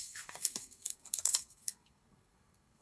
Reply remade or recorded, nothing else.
remade